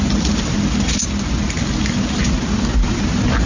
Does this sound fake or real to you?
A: real